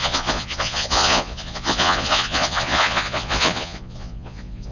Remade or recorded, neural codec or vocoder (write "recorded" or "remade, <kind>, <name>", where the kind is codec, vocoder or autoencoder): remade, vocoder, Vocos